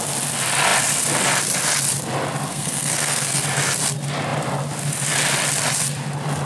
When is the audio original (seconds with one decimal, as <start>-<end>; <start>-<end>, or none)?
0.0-2.5; 3.4-6.5